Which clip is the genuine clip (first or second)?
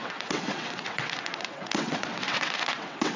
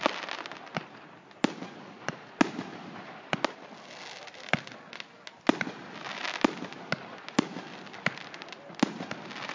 second